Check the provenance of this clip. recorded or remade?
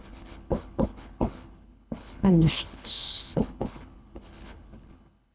remade